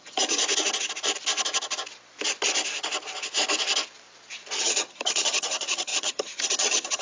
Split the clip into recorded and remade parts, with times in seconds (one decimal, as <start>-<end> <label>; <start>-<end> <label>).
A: 0.0-0.4 remade; 0.4-4.6 recorded; 4.6-7.0 remade